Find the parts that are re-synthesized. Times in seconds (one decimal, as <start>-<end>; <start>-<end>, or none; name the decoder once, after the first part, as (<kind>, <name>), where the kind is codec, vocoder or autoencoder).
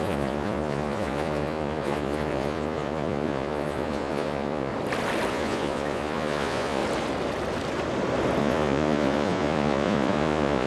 0.0-4.7 (vocoder, Vocos); 5.3-6.8; 8.4-10.7